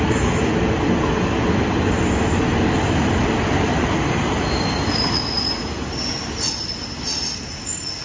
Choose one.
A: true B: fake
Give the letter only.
A